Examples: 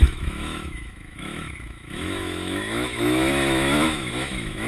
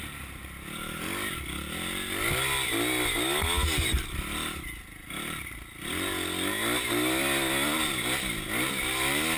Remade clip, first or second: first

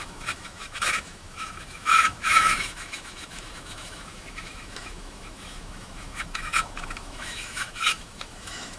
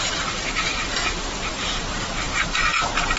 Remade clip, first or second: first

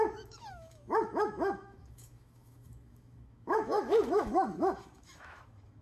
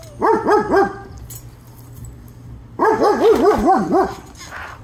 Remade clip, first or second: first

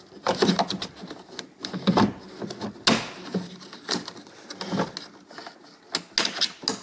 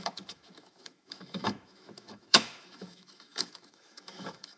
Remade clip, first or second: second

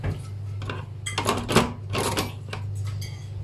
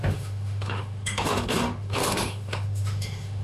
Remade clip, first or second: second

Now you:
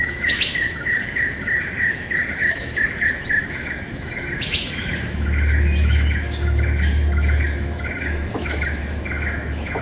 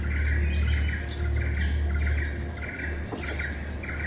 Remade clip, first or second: first